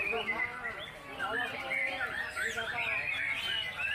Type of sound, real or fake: real